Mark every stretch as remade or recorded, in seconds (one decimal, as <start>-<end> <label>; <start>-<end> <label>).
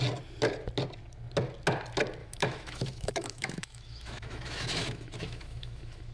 0.0-2.2 recorded; 2.2-6.1 remade